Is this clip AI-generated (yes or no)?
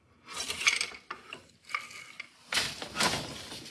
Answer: no